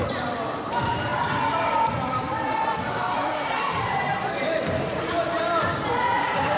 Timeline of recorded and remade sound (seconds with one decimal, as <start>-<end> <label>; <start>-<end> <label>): 0.0-6.6 remade